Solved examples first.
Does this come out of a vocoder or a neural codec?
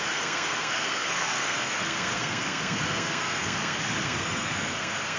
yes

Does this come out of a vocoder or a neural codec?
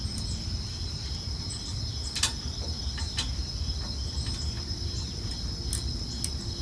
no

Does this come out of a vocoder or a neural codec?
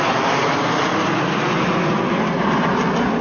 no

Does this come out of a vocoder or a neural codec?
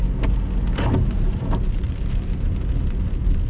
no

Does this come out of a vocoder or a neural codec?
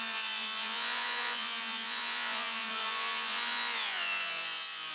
yes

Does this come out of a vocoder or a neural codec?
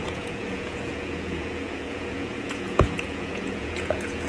yes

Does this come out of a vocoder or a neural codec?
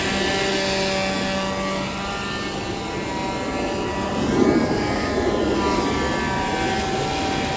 no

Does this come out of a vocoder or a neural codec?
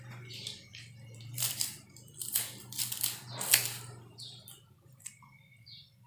no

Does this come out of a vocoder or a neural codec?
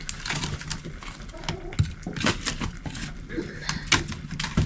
no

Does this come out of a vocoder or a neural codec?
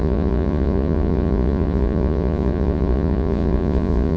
yes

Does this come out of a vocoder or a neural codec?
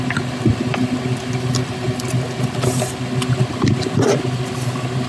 no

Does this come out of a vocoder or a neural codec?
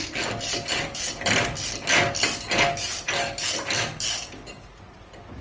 no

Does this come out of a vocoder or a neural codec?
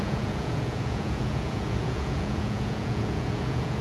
yes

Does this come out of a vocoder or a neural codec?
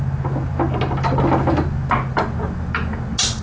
no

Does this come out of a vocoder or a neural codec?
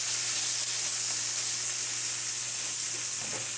no